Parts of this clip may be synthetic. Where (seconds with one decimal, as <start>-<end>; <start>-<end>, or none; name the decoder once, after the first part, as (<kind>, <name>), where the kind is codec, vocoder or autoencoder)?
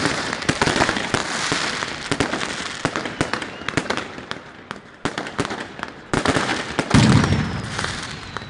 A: 0.0-1.2 (vocoder, BigVGAN v2); 5.4-6.5; 7.2-8.5